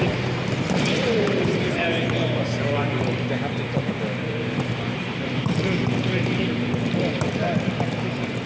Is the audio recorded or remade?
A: remade